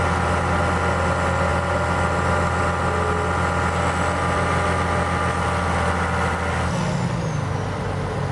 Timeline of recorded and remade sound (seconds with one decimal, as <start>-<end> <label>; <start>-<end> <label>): 0.0-8.3 recorded